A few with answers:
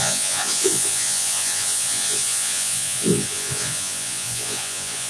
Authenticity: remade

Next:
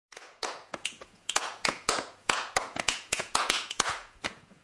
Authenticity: remade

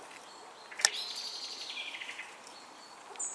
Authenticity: recorded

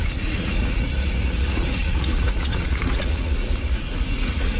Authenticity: remade